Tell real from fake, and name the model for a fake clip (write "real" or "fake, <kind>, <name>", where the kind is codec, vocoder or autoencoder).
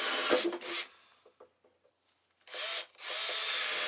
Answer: real